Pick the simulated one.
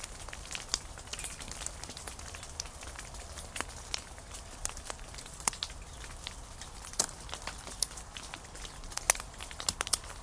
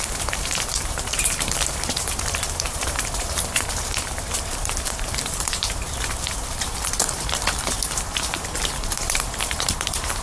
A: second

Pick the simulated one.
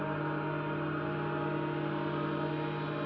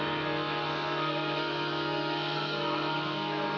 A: second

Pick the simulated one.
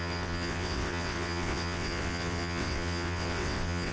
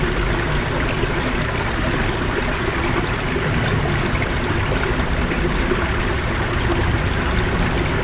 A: first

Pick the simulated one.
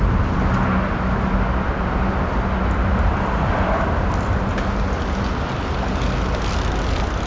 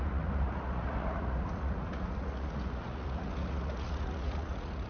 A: second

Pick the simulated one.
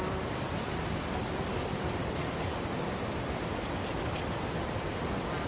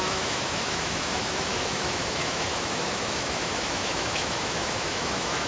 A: second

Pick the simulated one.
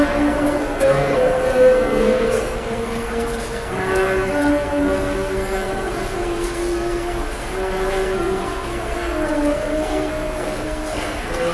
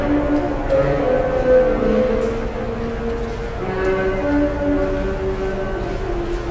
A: first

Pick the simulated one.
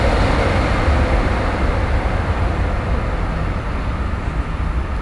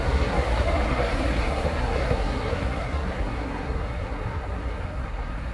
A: second